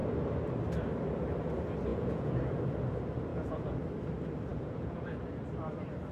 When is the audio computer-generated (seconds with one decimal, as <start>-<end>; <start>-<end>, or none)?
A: 1.9-2.6; 3.3-3.8; 4.5-5.3